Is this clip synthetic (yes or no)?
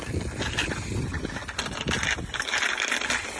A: no